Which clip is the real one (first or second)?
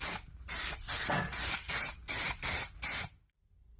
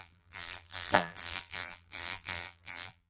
first